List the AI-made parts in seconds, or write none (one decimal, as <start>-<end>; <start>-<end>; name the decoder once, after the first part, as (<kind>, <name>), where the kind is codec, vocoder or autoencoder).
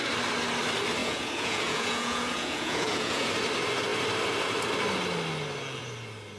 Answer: 1.0-3.3 (vocoder, Vocos)